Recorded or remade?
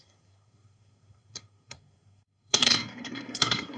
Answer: remade